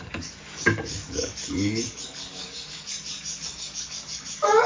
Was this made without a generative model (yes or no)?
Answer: no